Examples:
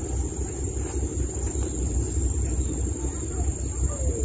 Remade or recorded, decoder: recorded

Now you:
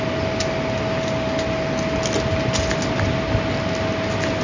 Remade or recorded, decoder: recorded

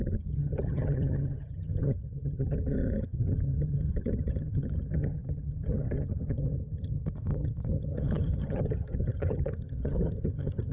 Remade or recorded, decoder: remade, vocoder, HiFi-GAN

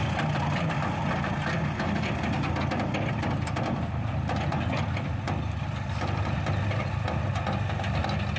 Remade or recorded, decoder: recorded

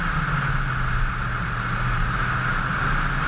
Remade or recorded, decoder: recorded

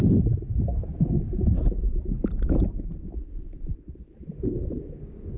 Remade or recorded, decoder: recorded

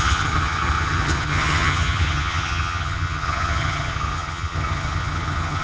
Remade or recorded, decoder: remade, vocoder, HiFi-GAN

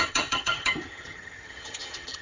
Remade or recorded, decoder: remade, vocoder, HiFi-GAN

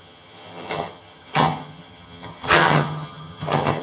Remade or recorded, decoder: remade, vocoder, HiFi-GAN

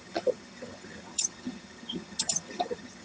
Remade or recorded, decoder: remade, vocoder, HiFi-GAN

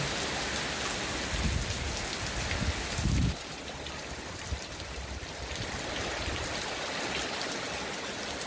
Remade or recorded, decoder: recorded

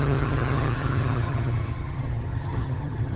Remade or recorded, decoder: remade, vocoder, HiFi-GAN